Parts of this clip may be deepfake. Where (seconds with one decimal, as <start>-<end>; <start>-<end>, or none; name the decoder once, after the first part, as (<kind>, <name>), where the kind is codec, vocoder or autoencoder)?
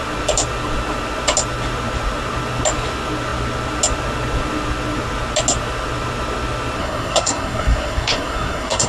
6.8-8.9 (codec, SNAC)